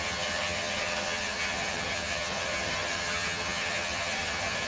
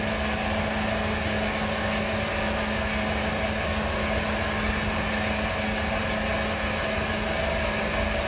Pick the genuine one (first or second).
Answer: second